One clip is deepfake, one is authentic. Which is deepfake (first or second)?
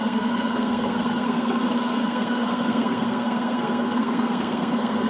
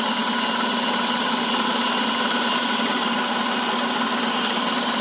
first